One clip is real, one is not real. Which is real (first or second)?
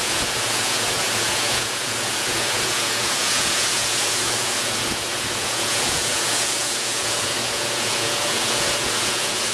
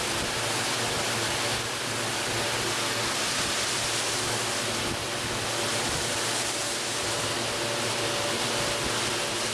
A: second